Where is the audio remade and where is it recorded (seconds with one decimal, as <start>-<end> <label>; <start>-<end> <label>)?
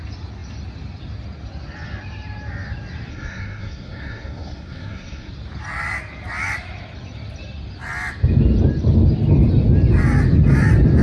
0.0-3.1 recorded; 3.1-5.3 remade; 5.3-11.0 recorded